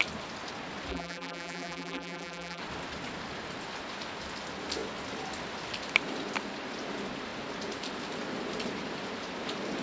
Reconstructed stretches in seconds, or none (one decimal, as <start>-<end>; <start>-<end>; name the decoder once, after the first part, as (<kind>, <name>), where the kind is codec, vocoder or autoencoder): 0.9-2.6 (vocoder, BigVGAN v2)